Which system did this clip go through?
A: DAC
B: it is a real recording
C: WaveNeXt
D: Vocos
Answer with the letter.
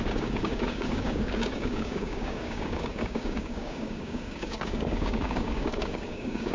A